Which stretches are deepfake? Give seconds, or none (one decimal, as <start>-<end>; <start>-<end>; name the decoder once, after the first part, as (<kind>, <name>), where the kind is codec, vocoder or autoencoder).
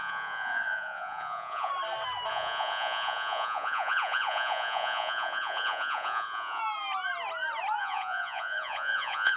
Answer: 0.0-1.7 (vocoder, Vocos); 2.3-6.6; 7.8-9.4